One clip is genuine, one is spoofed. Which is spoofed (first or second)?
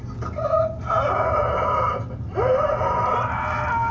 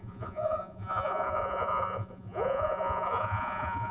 second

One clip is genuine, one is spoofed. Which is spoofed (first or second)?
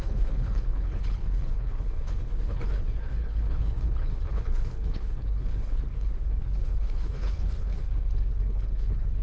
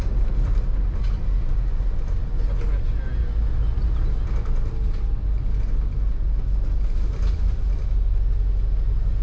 first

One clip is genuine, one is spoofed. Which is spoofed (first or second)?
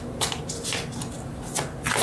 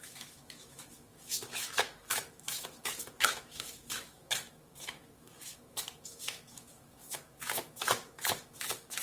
second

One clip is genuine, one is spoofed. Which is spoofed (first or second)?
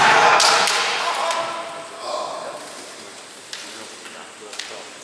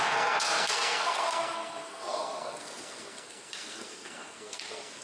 second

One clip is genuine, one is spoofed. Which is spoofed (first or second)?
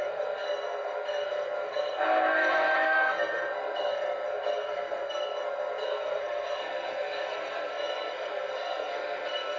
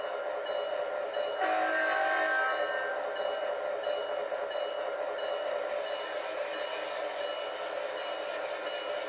first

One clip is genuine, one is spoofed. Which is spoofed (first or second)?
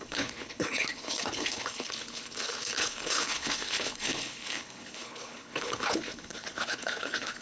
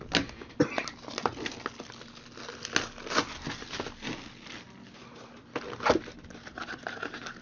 first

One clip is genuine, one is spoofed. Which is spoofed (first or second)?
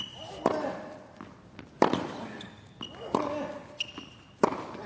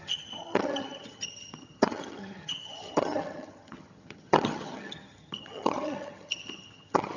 second